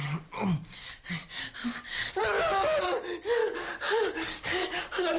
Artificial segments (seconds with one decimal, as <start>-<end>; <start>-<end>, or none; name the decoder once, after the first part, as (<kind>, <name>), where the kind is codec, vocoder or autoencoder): 1.6-2.2 (codec, DAC); 3.4-4.8